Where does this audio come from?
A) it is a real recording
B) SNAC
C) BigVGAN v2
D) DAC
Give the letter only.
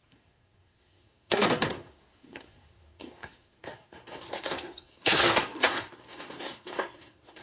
B